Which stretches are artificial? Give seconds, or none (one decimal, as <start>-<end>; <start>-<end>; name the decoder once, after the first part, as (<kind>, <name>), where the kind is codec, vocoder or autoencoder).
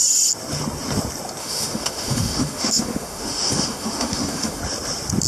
1.4-4.6 (autoencoder, DAC-VAE)